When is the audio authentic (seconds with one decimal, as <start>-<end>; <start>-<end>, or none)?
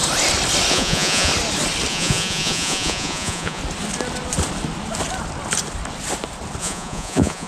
0.0-0.7; 1.3-1.9; 3.6-6.6